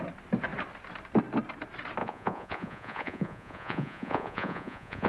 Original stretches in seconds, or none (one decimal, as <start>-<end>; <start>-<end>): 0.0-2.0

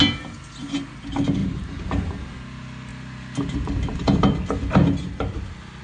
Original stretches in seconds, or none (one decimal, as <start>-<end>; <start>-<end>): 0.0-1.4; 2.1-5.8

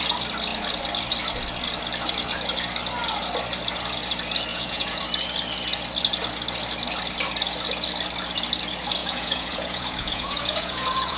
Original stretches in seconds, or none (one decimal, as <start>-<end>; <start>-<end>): 0.0-4.5; 5.0-9.0

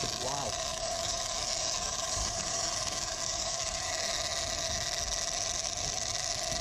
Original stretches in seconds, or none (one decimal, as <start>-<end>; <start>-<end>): 0.0-0.7; 3.9-6.6

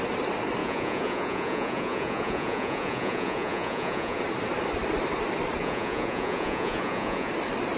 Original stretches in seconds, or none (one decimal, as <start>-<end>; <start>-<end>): 0.0-0.6; 4.2-5.6; 7.3-7.8

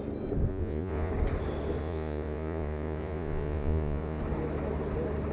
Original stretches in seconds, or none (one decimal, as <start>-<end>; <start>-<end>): 0.0-0.5; 1.1-1.8; 4.2-5.3

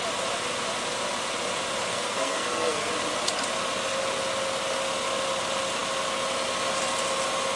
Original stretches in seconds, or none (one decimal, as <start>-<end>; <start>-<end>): 0.0-1.9; 2.9-7.6

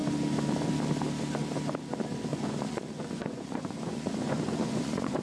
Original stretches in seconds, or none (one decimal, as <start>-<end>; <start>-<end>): 0.0-2.3